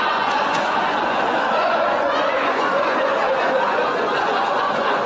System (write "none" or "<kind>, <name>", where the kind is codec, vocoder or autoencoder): vocoder, Vocos